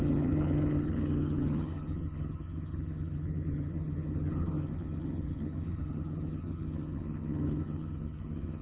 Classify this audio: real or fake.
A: fake